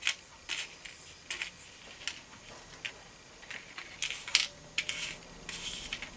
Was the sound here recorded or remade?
recorded